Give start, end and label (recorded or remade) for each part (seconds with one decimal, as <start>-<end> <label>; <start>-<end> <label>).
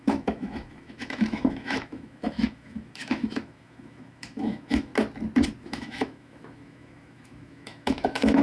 0.0-4.9 remade; 4.9-5.6 recorded; 5.6-8.4 remade